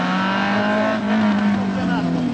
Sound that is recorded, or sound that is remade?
recorded